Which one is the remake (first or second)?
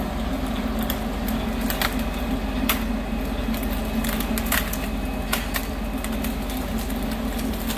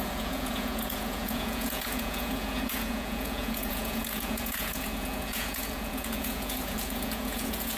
second